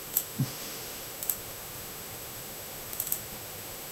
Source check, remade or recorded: remade